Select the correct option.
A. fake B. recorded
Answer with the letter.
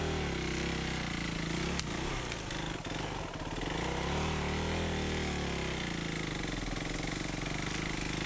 B